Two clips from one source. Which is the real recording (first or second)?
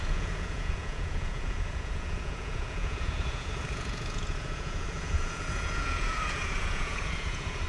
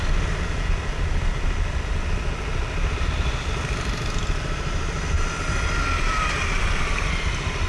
second